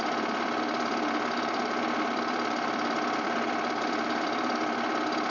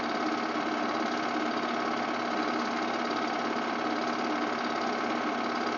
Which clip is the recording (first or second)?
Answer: second